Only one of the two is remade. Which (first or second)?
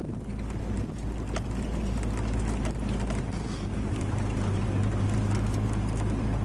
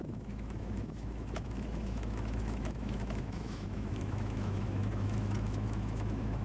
second